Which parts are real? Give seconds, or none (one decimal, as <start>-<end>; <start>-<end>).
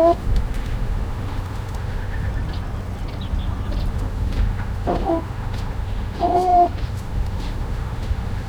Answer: 2.3-3.9